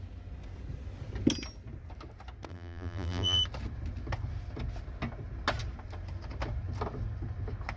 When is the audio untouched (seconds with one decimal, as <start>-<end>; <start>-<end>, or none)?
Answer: 0.0-2.5; 3.4-7.8